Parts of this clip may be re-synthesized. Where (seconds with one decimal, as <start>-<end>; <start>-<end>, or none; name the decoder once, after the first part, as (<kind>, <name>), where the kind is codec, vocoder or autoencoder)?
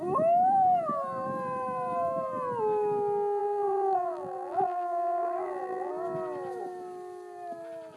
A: 3.4-5.9 (vocoder, BigVGAN v2)